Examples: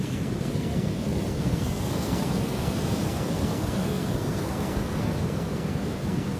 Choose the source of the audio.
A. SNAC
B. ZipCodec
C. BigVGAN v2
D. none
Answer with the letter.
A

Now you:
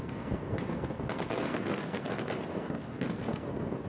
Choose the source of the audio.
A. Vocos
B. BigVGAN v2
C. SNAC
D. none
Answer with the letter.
C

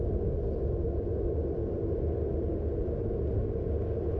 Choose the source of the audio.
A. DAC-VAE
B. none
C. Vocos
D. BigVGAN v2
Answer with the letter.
B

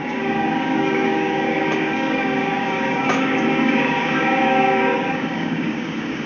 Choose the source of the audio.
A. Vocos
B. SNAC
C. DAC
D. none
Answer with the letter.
C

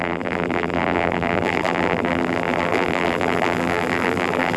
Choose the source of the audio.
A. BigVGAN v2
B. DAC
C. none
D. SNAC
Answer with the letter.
A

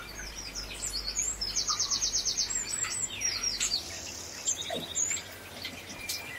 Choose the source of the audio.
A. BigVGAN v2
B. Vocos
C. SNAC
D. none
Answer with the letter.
A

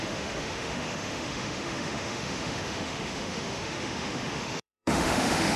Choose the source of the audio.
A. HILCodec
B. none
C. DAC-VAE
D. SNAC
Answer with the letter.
C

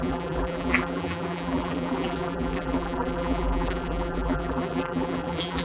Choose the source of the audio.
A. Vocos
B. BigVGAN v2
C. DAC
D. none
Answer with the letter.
B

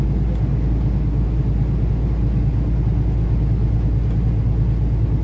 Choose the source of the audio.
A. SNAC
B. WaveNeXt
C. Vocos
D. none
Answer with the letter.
D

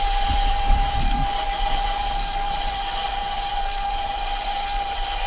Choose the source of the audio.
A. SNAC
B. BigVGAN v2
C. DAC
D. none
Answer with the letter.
B